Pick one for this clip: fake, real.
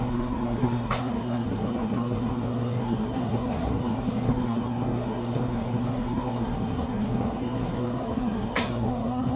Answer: fake